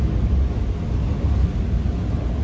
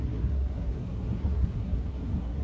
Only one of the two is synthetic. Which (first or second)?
second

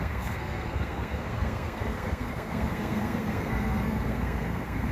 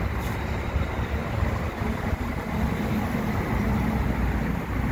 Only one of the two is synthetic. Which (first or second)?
first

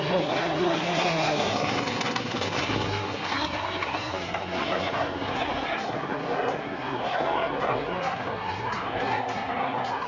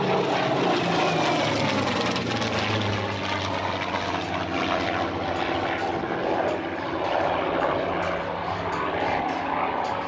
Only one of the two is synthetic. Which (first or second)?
first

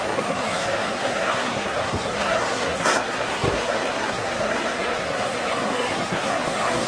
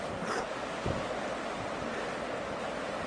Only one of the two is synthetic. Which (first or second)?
first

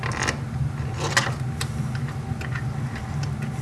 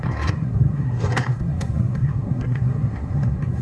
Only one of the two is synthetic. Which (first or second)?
second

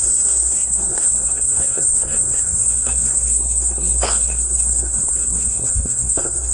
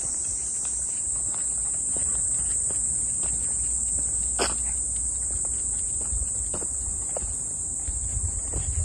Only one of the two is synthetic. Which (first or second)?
first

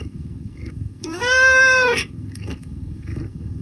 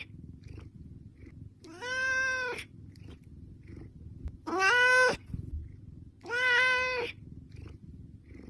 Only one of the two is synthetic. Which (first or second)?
first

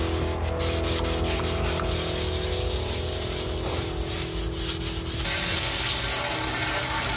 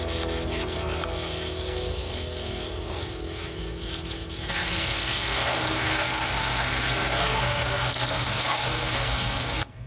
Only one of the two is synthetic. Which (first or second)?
second